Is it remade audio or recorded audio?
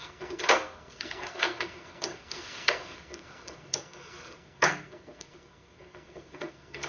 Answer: remade